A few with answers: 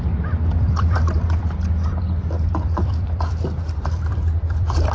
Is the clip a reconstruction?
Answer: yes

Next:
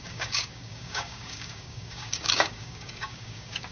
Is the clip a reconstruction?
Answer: yes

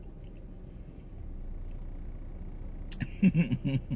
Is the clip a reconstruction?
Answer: no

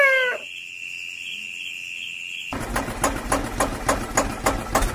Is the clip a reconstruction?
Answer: no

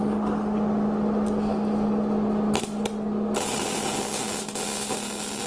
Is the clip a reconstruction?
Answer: no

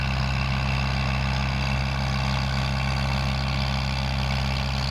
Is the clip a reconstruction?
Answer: no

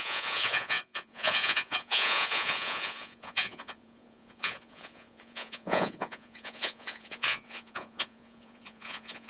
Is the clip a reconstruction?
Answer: yes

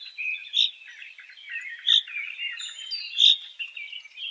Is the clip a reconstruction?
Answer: no